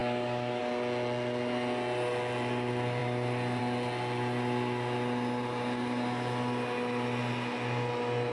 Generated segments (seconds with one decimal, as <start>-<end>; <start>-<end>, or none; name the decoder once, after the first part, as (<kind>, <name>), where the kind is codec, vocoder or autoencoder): 0.0-0.6 (codec, DAC)